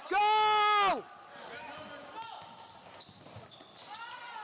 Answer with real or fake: real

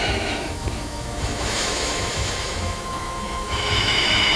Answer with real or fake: fake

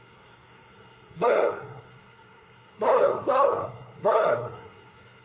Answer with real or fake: fake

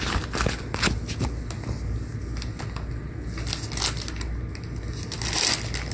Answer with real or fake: real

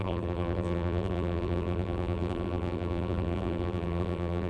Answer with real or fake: fake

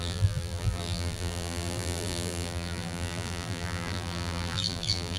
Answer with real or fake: fake